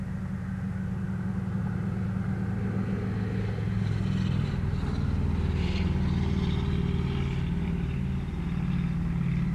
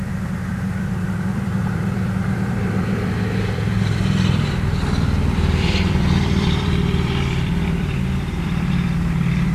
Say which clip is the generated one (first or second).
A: second